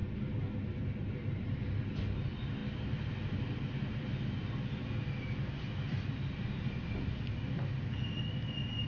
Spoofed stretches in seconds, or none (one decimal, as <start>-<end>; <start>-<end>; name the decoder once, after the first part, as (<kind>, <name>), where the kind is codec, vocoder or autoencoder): none